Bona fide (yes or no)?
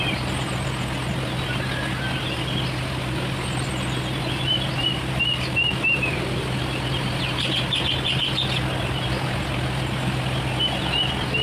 yes